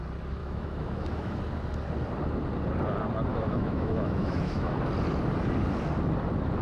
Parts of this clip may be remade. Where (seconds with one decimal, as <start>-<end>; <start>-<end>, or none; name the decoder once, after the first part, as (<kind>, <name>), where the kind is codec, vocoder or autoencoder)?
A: 0.4-1.4 (autoencoder, DAC-VAE); 3.3-4.7